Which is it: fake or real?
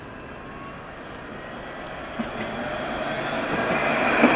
real